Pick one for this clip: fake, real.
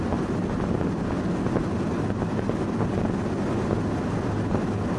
real